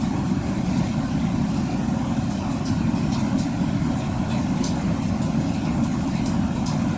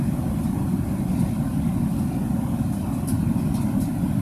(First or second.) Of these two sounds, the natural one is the second